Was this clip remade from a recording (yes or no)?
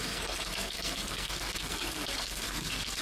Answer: yes